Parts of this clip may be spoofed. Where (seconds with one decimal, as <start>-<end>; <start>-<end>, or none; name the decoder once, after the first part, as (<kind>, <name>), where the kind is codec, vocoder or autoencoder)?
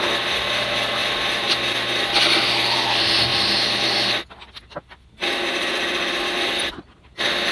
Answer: 1.0-1.6 (vocoder, BigVGAN v2)